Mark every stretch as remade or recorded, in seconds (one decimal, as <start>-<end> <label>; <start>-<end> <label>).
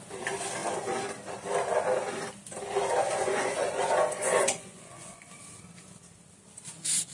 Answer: 0.0-3.2 recorded; 3.2-5.2 remade; 5.2-7.1 recorded